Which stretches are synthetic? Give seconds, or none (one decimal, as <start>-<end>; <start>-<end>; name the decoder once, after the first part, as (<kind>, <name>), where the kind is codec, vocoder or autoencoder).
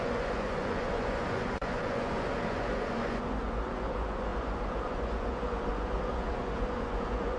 0.0-7.4 (vocoder, Vocos)